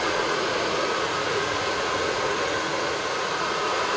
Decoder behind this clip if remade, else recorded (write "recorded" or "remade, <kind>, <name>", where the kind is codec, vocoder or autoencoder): remade, vocoder, Vocos